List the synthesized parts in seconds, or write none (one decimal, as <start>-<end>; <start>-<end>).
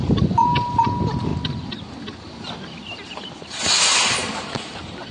none